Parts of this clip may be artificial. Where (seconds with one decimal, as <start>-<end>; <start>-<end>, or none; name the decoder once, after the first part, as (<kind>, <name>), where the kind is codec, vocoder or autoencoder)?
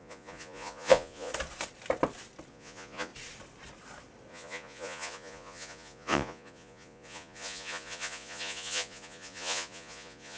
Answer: 0.0-1.3 (vocoder, Vocos); 2.5-3.1; 4.3-10.4